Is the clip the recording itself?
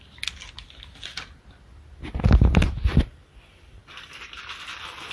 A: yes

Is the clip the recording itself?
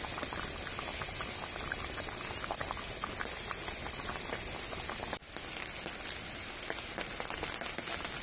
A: yes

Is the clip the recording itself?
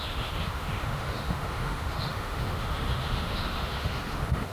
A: no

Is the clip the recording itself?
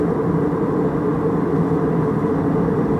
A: yes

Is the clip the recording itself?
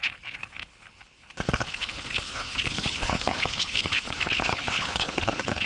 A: no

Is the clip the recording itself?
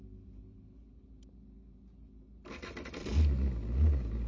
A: yes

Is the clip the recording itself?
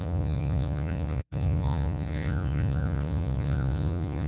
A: no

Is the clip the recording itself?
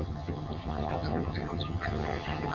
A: no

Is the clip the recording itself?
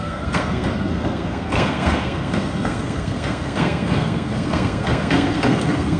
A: no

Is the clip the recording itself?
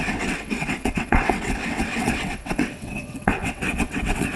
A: no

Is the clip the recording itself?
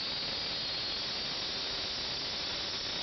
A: yes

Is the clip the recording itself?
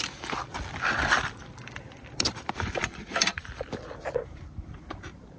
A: no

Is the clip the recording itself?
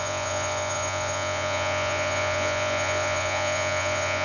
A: no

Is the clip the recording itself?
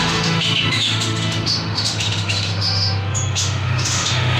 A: no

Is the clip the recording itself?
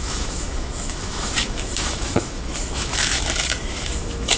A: no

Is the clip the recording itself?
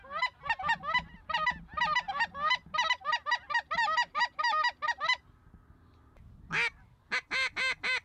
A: yes